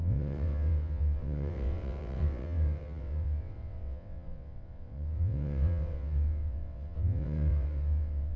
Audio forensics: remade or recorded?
remade